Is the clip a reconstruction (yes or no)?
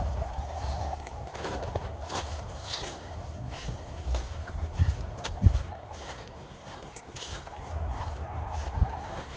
yes